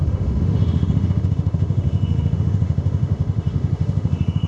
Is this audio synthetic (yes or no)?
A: yes